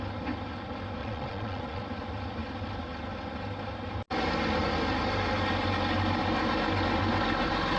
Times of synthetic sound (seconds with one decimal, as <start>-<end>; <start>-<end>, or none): 1.0-1.8